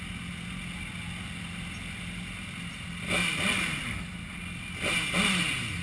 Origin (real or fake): real